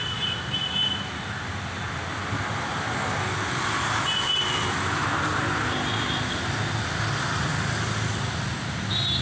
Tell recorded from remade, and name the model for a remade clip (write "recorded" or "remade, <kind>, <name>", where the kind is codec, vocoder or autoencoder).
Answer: recorded